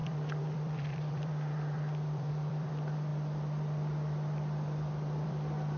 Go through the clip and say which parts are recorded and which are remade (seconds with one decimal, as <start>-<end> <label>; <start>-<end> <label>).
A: 0.0-5.8 remade

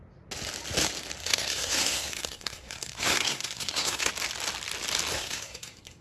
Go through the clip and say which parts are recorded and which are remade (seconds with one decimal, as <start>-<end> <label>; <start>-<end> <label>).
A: 0.0-1.2 recorded; 1.2-4.1 remade; 4.1-5.1 recorded; 5.1-6.0 remade

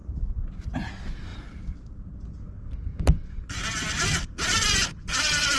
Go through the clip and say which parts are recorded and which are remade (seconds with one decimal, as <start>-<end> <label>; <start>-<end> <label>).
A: 0.0-0.9 remade; 0.9-1.3 recorded; 1.3-2.1 remade; 2.1-2.9 recorded; 2.9-5.6 remade

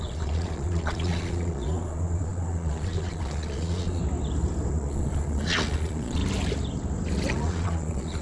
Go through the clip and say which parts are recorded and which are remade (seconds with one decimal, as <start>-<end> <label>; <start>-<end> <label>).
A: 0.0-4.0 remade; 4.0-4.7 recorded; 4.7-6.2 remade; 6.2-7.3 recorded; 7.3-8.2 remade

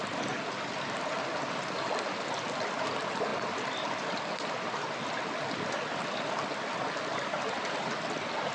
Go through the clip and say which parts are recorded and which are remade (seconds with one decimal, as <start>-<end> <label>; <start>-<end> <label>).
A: 0.0-8.5 recorded